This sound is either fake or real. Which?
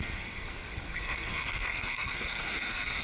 fake